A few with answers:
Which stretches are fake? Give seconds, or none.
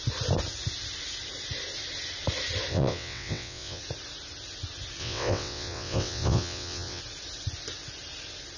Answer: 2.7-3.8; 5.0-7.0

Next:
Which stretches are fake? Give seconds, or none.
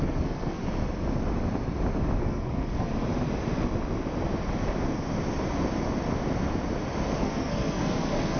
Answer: 0.0-0.6; 2.2-2.9; 7.2-8.4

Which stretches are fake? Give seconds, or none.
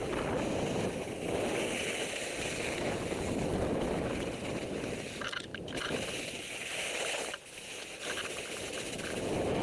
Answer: none